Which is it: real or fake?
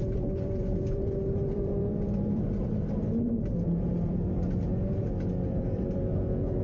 fake